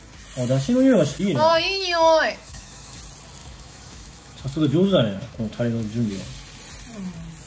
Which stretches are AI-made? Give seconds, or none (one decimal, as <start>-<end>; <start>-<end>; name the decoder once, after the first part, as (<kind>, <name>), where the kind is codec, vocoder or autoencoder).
1.5-3.0 (autoencoder, DAC-VAE); 3.4-6.1